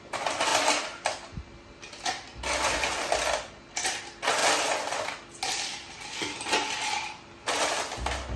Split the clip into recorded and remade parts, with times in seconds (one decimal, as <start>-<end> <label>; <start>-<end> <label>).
0.0-8.4 recorded

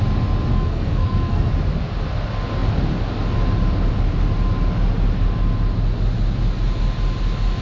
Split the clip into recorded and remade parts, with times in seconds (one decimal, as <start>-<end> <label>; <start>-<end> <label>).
0.0-0.5 recorded; 0.5-1.5 remade; 1.5-7.6 recorded